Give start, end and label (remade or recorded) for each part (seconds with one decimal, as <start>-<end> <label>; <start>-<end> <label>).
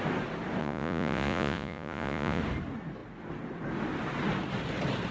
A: 0.0-0.6 recorded; 0.6-2.4 remade; 2.4-5.1 recorded